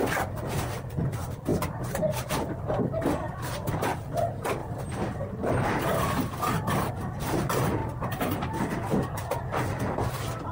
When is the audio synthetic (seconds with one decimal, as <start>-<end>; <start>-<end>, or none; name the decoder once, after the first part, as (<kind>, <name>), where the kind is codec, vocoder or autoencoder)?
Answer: 1.5-2.3 (vocoder, BigVGAN v2); 4.6-6.9; 7.8-8.6